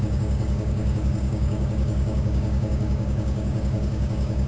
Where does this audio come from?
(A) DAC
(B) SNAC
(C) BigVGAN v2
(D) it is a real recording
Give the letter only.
A